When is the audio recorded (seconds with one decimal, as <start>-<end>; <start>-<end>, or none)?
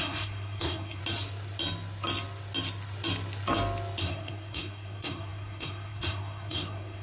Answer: 1.0-4.0